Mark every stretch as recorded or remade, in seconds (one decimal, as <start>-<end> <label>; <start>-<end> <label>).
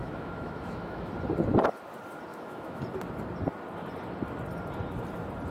0.0-1.1 remade; 1.1-2.3 recorded; 2.3-2.8 remade; 2.8-5.5 recorded